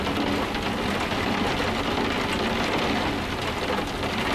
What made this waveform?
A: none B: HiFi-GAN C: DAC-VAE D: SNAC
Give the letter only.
A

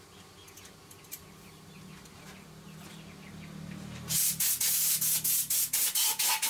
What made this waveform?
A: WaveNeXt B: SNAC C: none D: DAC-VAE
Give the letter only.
C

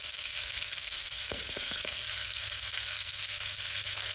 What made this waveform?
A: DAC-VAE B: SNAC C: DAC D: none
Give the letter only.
B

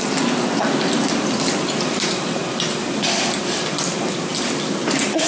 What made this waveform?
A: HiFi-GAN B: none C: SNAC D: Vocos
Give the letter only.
B